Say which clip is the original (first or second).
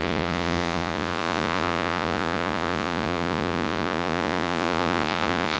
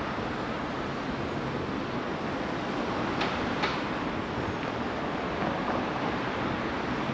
second